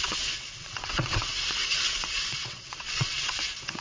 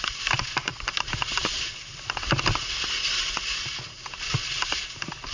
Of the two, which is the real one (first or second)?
second